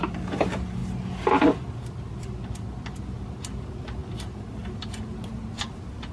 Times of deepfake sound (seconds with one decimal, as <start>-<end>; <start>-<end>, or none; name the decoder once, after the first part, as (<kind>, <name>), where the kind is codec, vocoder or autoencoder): none